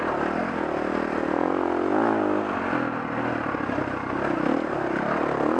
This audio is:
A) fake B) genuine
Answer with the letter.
B